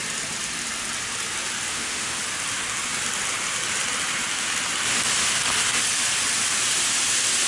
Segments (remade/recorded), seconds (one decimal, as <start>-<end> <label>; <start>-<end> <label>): 0.0-1.7 recorded; 1.7-2.2 remade; 2.2-7.5 recorded